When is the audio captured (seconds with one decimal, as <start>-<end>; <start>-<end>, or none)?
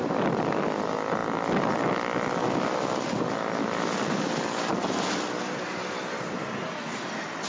0.0-7.5